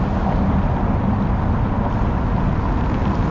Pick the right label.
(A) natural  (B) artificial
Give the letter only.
A